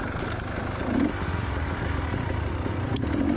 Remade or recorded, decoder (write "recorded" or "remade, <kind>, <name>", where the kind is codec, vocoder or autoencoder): recorded